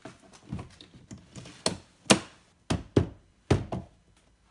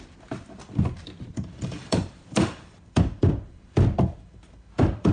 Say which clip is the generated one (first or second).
second